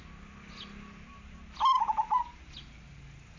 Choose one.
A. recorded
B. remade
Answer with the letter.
A